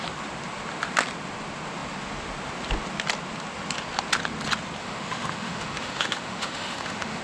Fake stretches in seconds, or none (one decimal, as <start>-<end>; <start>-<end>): 4.8-7.2

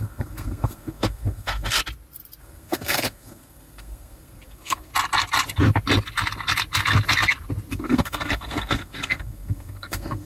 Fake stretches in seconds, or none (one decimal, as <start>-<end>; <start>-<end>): 0.0-1.8; 2.4-4.9; 7.7-10.3